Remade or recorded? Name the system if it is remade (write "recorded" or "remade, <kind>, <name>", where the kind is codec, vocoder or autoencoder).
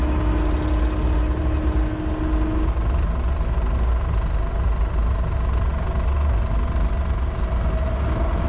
recorded